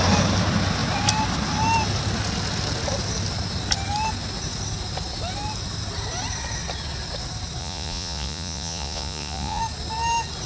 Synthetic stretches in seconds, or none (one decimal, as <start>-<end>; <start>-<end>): 7.6-9.6